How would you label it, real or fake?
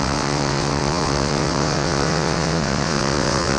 fake